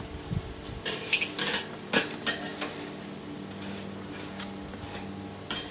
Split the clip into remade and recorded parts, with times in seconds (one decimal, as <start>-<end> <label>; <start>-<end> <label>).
0.0-5.7 recorded